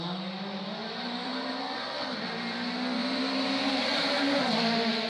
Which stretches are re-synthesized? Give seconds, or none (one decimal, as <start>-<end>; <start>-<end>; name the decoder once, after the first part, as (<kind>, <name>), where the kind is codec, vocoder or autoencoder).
0.8-2.1 (vocoder, BigVGAN v2); 3.0-3.6